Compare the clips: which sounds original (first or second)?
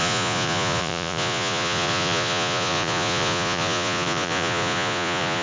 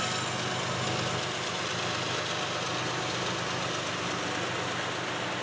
second